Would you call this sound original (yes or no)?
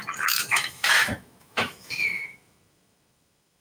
no